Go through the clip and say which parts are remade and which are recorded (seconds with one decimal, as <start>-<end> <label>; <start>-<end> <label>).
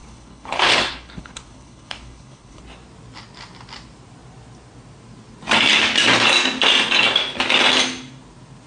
0.0-2.6 remade; 2.6-8.7 recorded